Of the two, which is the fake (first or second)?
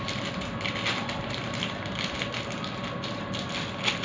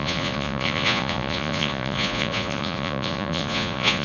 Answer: second